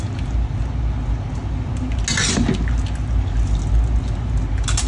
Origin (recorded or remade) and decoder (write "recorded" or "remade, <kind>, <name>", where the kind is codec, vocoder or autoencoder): recorded